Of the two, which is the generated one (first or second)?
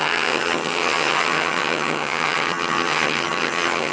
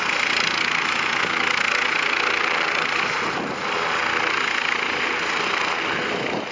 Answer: first